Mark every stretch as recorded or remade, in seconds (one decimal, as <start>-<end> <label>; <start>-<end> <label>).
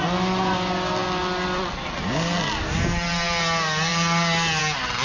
0.0-5.0 recorded